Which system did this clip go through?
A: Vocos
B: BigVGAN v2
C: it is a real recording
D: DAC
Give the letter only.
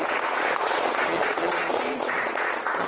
A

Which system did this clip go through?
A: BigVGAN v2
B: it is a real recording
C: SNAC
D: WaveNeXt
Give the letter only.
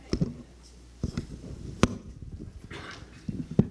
B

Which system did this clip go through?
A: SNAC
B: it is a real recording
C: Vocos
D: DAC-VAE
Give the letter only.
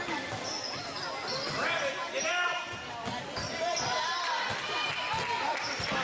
B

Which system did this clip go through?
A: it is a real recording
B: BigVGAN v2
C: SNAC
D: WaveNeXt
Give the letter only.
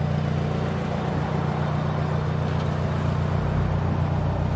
A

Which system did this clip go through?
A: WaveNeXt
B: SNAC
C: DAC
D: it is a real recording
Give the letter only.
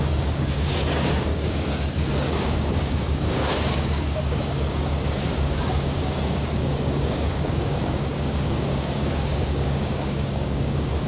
C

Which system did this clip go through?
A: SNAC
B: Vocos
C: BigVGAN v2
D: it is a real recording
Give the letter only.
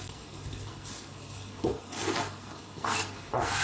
A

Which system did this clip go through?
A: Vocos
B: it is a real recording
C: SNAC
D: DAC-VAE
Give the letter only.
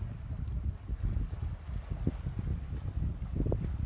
B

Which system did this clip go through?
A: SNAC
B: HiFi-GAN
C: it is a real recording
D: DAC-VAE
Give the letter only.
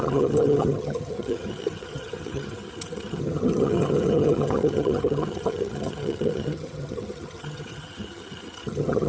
B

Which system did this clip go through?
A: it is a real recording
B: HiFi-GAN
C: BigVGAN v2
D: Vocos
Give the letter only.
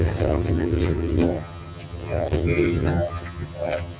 B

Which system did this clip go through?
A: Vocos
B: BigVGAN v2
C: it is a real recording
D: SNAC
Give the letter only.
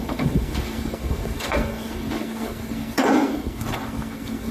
D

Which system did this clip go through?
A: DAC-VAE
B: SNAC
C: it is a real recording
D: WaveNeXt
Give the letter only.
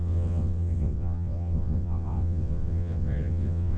D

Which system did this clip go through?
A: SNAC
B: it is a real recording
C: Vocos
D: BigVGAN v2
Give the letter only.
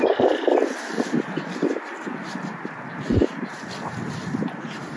B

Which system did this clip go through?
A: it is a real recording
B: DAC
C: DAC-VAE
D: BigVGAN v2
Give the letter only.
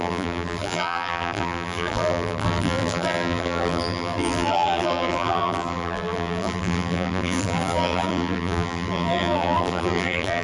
D